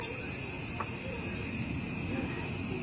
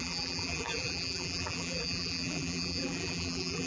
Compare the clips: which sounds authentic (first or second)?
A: first